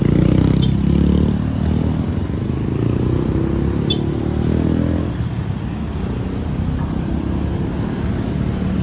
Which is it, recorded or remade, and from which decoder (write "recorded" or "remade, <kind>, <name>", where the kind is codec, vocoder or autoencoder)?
recorded